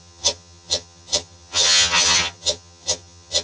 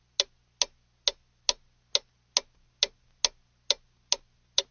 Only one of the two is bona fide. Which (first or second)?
second